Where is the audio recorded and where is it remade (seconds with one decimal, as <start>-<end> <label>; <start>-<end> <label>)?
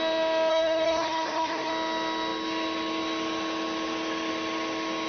0.0-0.5 recorded; 0.5-1.7 remade; 1.7-5.1 recorded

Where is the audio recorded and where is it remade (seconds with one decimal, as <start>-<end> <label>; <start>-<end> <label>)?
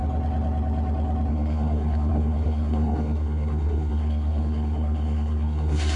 0.0-1.3 recorded; 1.3-6.0 remade